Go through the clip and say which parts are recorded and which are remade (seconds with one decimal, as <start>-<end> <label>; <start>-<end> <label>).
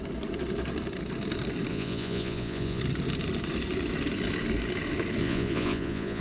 0.0-1.7 recorded; 1.7-2.8 remade; 2.8-5.2 recorded; 5.2-6.2 remade